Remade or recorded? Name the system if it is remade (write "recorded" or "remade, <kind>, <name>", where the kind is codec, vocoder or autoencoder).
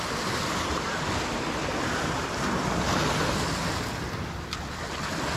recorded